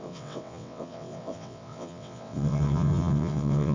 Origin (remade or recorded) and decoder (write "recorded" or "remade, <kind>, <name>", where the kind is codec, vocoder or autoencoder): remade, vocoder, WaveNeXt